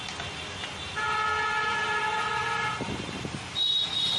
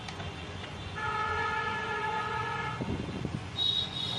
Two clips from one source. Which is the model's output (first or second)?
second